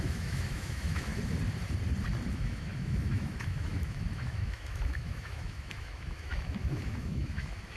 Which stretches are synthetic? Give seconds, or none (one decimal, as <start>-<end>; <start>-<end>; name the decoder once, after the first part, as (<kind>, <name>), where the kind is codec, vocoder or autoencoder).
0.0-1.1 (autoencoder, DAC-VAE); 2.3-7.8